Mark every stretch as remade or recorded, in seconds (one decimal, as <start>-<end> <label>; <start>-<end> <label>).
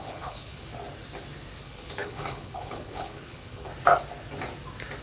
0.0-0.7 remade; 0.7-1.6 recorded; 1.6-3.7 remade; 3.7-5.0 recorded